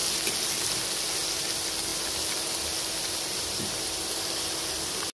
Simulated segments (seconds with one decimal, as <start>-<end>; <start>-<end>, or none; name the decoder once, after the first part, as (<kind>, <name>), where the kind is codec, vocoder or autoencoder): none